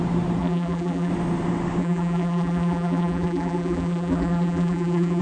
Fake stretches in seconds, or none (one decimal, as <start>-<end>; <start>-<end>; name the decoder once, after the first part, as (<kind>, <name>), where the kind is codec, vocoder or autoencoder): 0.4-1.1 (vocoder, BigVGAN v2); 1.8-5.2